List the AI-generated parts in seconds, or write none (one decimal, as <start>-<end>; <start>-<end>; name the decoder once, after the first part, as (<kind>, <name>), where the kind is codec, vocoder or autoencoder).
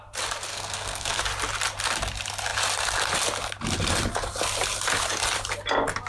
0.5-1.2 (codec, SNAC)